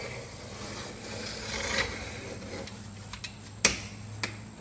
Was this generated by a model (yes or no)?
no